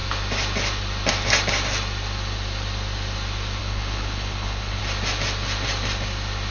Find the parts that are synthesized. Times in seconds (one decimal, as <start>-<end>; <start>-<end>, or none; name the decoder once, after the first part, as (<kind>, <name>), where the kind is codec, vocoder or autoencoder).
3.6-4.8 (codec, HILCodec)

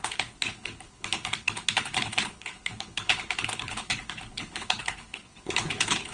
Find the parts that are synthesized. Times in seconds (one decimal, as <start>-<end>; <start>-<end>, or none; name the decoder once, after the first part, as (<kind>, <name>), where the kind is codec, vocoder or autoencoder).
0.0-6.1 (codec, HILCodec)